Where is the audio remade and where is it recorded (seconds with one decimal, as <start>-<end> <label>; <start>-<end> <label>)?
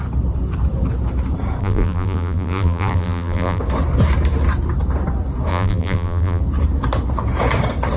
0.0-1.6 recorded; 1.6-3.6 remade; 3.6-5.5 recorded; 5.5-6.4 remade; 6.4-8.0 recorded